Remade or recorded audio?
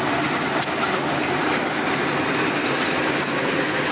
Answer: recorded